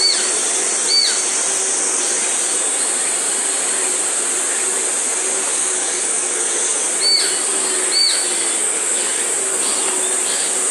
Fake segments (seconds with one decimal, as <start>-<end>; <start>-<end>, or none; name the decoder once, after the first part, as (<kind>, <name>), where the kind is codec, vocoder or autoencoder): 5.5-6.8 (codec, DAC); 8.6-9.2